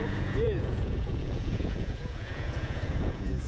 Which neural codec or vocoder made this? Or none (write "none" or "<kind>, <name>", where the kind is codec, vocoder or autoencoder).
vocoder, Vocos